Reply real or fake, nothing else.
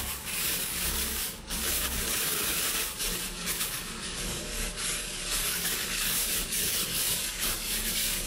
fake